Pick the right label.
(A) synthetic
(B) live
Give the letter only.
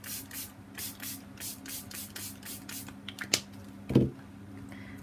B